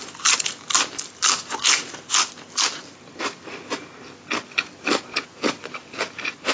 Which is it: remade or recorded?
recorded